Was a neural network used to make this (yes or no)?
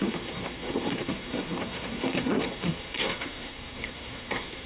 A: yes